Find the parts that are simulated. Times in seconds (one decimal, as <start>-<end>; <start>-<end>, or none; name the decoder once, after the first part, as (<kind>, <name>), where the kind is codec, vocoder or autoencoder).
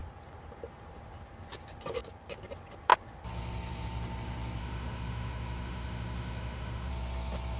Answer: 4.6-6.9 (autoencoder, DAC-VAE)